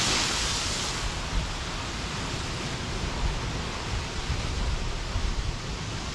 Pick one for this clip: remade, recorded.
recorded